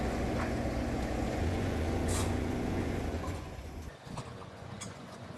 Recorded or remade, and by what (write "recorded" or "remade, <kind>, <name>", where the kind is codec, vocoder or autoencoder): remade, vocoder, Vocos